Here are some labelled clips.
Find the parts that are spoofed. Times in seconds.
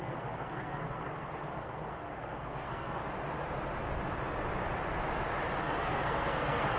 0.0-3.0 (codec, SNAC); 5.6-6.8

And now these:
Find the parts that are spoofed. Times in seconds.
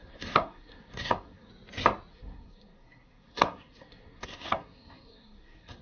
0.0-1.5 (codec, SNAC); 2.1-5.8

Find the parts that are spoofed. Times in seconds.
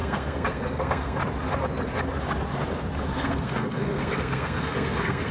0.0-1.2 (codec, SNAC); 3.1-5.3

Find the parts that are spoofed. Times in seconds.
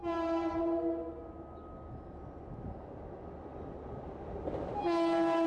none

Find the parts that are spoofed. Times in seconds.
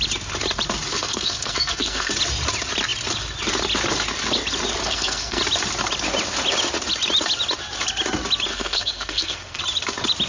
0.9-2.1 (codec, SNAC); 4.8-5.4; 8.5-9.6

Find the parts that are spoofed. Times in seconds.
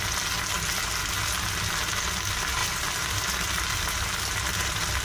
none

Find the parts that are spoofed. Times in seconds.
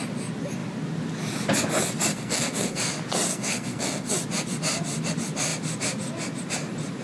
2.1-2.8 (codec, SNAC); 3.3-4.1